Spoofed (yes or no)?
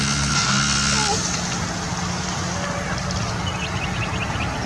no